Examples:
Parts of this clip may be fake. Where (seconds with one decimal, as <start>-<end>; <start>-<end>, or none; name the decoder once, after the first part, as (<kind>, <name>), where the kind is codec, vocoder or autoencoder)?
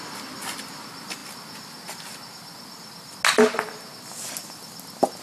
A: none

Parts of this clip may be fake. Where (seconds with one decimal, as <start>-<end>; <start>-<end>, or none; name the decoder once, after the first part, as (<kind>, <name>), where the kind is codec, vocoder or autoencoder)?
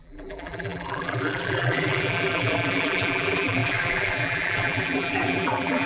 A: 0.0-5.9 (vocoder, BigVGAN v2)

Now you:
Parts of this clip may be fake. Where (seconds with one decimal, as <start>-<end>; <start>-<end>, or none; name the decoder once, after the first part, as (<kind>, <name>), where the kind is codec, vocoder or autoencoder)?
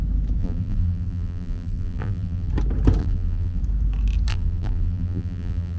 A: 0.4-2.5 (vocoder, BigVGAN v2); 3.0-3.6; 4.3-5.8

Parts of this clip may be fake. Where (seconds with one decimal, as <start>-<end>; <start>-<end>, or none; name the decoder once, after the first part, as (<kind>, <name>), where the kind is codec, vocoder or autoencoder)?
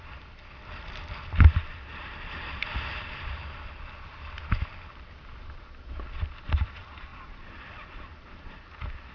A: 1.9-2.6 (vocoder, BigVGAN v2); 8.1-8.7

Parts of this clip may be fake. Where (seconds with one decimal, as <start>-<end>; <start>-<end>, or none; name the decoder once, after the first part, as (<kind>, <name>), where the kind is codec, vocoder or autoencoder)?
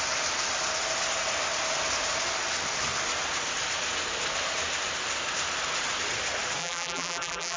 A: 6.6-7.6 (vocoder, BigVGAN v2)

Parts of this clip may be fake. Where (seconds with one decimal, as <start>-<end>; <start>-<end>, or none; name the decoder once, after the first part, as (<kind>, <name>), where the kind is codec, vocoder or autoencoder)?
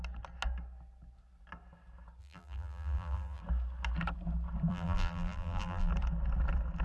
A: 2.2-3.4 (vocoder, BigVGAN v2); 4.7-5.9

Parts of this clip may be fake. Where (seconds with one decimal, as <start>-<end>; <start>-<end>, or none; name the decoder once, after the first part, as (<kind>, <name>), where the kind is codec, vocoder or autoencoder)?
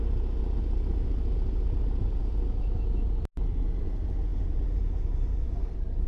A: 4.3-6.1 (vocoder, BigVGAN v2)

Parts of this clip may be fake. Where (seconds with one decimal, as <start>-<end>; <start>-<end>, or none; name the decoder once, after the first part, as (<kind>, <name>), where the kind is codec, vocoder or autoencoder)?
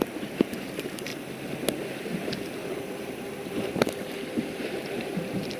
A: 0.0-1.1 (vocoder, BigVGAN v2); 2.6-4.0; 4.6-5.6